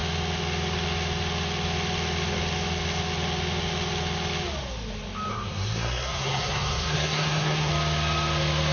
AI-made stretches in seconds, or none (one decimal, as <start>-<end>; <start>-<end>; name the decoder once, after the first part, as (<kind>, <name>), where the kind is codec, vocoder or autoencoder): 5.3-7.7 (codec, SNAC)